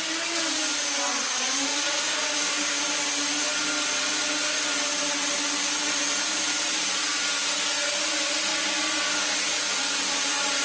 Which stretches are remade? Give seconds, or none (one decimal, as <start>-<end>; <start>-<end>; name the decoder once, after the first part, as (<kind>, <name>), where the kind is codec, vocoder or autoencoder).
1.7-2.8 (codec, DAC)